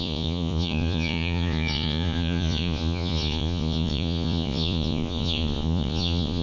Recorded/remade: remade